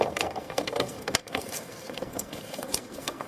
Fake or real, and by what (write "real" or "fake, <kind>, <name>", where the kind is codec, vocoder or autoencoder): fake, codec, SNAC